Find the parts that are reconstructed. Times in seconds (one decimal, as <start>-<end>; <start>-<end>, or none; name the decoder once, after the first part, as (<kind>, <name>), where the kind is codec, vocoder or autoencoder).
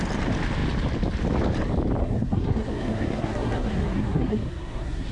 2.0-5.1 (codec, SNAC)